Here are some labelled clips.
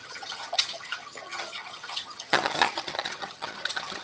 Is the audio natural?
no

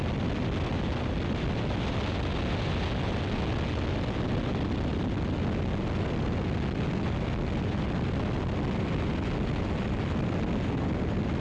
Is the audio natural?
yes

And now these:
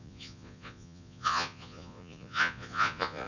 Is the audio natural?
no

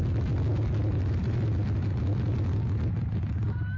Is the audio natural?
yes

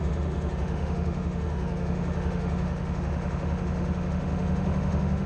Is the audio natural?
no